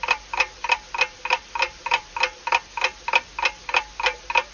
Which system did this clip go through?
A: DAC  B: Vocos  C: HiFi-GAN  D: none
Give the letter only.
D